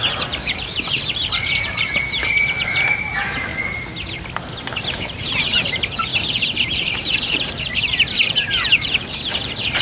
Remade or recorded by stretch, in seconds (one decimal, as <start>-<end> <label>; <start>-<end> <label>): 0.0-3.5 remade; 3.5-4.9 recorded; 4.9-9.8 remade